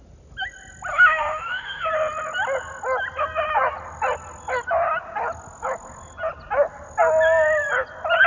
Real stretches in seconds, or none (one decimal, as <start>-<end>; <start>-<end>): 0.0-0.9; 1.9-8.3

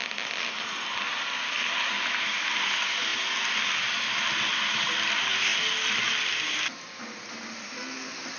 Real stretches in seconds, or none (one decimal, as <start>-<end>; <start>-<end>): 0.0-8.4

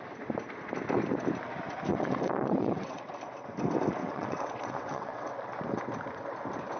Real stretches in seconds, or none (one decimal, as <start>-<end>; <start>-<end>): 0.0-1.9; 3.0-4.0; 5.3-6.8

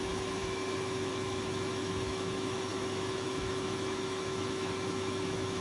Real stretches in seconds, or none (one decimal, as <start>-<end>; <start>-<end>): none

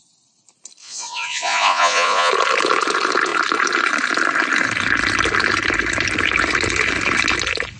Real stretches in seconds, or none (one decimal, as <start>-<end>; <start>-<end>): 0.0-0.8; 2.3-7.8